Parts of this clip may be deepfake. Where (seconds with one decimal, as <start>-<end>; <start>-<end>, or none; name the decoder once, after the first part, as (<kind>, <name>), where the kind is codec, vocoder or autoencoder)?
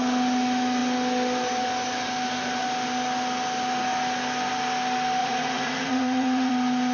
5.2-6.5 (vocoder, Vocos)